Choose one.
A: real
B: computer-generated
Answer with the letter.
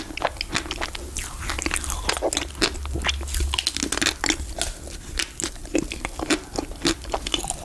A